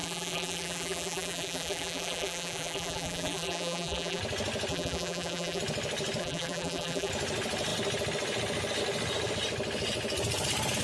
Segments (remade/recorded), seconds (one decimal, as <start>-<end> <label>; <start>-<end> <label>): 0.0-4.2 remade; 4.2-4.7 recorded; 4.7-5.6 remade; 5.6-6.2 recorded; 6.2-7.1 remade; 7.1-10.8 recorded